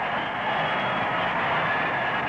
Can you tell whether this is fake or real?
real